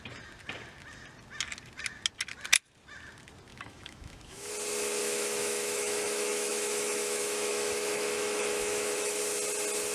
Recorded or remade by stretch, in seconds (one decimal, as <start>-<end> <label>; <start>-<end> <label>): 0.0-3.5 recorded; 3.5-4.5 remade; 4.5-5.0 recorded; 5.0-9.2 remade; 9.2-9.9 recorded